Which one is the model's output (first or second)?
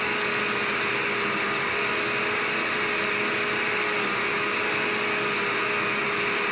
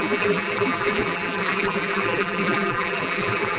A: second